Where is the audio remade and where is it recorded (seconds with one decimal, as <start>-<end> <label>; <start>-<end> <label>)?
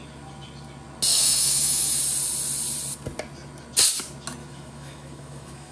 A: 0.0-1.1 recorded; 1.1-2.0 remade; 2.0-4.4 recorded; 4.4-5.7 remade